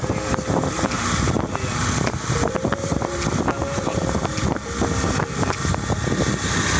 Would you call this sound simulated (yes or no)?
no